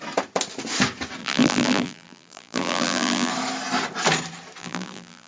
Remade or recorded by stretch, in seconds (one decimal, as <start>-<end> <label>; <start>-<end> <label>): 0.0-1.2 recorded; 1.2-3.3 remade; 3.3-4.6 recorded; 4.6-5.3 remade